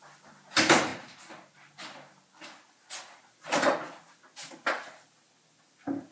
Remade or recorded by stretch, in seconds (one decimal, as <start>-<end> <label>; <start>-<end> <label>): 0.0-6.1 recorded